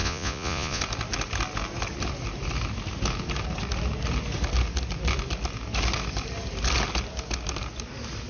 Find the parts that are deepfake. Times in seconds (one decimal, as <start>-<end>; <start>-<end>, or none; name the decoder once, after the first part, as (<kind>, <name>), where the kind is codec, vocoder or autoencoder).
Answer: 0.0-0.8 (vocoder, Vocos)